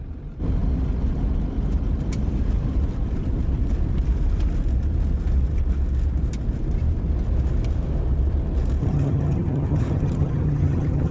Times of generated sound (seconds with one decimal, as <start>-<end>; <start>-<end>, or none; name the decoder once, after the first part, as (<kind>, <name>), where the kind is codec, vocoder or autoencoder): 8.8-11.1 (vocoder, HiFi-GAN)